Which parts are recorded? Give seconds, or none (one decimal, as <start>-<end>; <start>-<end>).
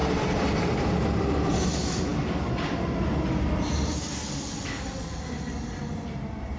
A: 0.0-6.6